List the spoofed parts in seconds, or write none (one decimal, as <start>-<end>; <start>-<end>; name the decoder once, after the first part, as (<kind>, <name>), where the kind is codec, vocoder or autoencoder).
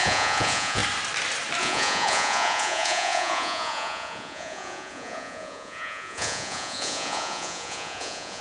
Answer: 0.0-0.8 (vocoder, Vocos); 1.6-8.4